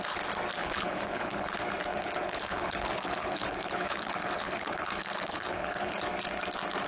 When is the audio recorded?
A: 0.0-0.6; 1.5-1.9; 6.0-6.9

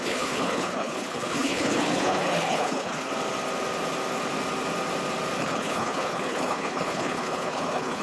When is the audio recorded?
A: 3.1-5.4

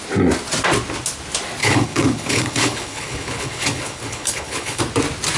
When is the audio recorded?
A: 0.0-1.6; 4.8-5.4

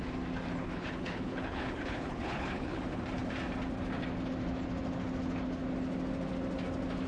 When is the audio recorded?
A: 0.0-0.6; 2.8-7.1

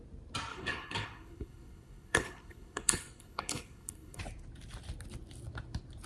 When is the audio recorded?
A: 0.0-0.5; 4.2-6.1